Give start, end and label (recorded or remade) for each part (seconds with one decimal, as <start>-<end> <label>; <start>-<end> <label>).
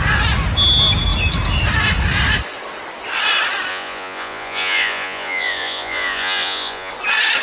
0.0-3.7 recorded; 3.7-6.9 remade; 6.9-7.4 recorded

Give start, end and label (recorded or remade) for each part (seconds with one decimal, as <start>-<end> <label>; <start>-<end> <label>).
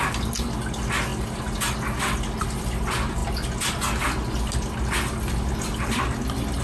0.0-6.6 recorded